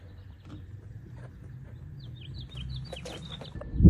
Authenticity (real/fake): real